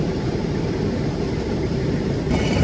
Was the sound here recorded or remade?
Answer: recorded